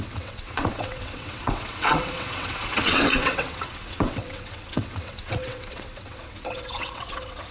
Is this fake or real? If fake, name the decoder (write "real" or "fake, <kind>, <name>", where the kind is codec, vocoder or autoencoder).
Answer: fake, vocoder, WaveNeXt